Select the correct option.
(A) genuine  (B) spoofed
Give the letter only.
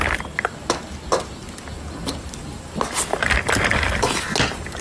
A